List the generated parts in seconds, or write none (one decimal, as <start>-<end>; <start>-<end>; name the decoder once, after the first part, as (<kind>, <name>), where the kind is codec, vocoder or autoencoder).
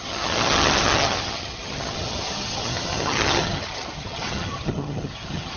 0.0-5.6 (vocoder, HiFi-GAN)